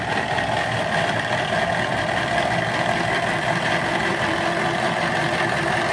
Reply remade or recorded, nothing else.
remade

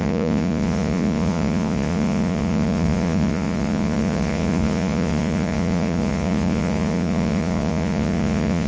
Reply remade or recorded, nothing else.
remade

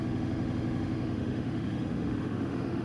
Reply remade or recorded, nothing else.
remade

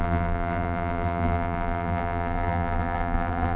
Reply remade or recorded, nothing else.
remade